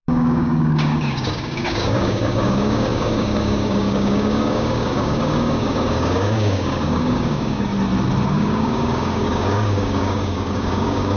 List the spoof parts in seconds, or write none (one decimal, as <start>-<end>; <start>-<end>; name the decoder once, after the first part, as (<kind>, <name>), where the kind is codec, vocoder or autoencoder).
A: 0.0-7.7 (codec, DAC); 8.3-11.2